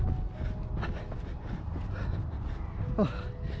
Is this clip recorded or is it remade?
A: recorded